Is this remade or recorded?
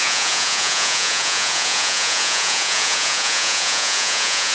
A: remade